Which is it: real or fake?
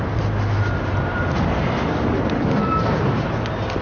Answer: real